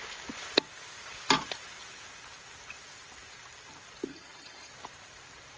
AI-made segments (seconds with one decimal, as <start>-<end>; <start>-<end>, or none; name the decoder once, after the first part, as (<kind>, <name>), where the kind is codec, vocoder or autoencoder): 4.1-4.7 (vocoder, HiFi-GAN)